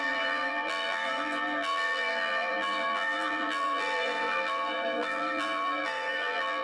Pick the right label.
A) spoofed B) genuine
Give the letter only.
A